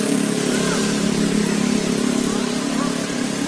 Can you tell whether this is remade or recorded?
recorded